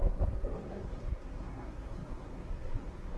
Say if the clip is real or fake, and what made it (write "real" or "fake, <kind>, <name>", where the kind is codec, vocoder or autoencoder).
fake, codec, SNAC